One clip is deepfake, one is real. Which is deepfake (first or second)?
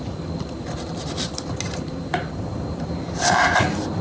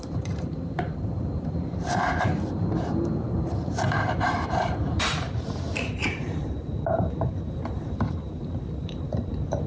second